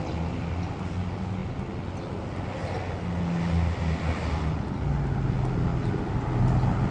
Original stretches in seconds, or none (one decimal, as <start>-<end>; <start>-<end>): 0.0-5.7; 6.2-6.9